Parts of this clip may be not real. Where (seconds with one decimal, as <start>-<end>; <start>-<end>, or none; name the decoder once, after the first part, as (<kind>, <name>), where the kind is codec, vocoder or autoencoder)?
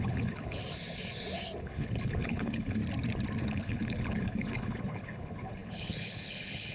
0.0-0.6 (codec, HILCodec); 1.6-2.8; 3.4-6.7